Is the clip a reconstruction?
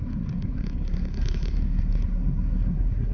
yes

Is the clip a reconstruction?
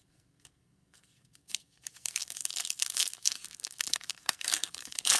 yes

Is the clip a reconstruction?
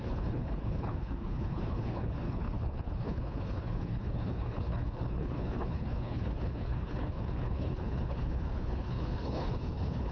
yes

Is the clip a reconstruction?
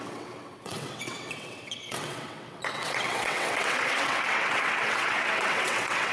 yes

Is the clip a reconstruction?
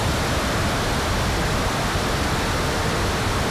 no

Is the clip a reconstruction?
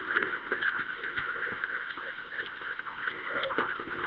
yes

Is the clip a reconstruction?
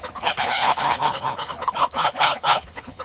yes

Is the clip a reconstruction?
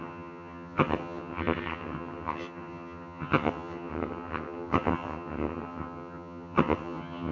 yes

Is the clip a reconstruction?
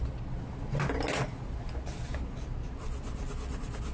no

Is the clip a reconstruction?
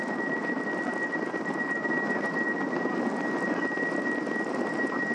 no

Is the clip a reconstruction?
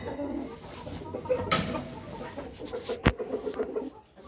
no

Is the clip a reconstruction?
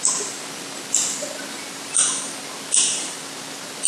no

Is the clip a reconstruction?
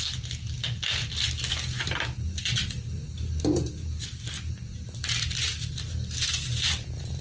no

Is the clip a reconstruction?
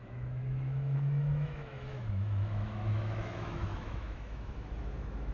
yes